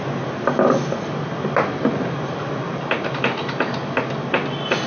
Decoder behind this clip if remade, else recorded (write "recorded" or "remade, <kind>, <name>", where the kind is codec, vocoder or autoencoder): recorded